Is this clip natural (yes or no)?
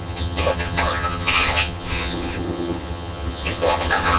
no